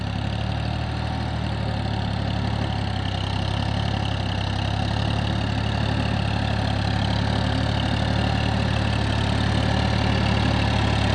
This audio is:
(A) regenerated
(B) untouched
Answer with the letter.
B